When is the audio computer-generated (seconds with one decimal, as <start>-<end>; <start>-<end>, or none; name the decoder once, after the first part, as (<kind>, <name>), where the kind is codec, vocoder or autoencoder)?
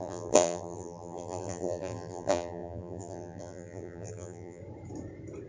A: 0.0-4.6 (vocoder, BigVGAN v2)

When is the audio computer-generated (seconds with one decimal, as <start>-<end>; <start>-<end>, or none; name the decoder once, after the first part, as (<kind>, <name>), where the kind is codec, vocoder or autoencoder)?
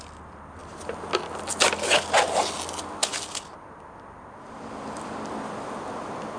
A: none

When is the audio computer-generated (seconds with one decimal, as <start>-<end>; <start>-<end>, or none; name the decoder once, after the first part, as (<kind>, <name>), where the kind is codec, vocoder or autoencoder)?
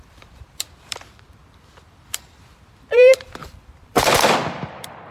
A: 0.0-5.1 (vocoder, BigVGAN v2)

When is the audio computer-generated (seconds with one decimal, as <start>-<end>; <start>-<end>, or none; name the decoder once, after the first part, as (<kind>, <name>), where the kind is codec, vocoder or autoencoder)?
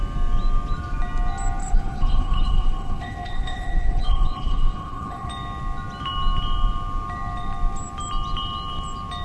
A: 1.6-5.3 (codec, HILCodec)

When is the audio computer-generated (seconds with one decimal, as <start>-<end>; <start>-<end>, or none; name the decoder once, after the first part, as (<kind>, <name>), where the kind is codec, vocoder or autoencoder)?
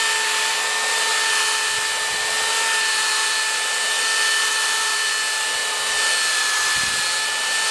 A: 4.5-5.1 (vocoder, BigVGAN v2)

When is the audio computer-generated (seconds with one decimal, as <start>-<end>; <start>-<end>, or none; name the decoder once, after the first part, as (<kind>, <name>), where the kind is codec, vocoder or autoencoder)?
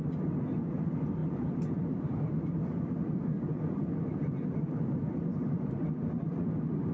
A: none